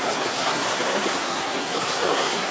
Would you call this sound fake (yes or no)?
yes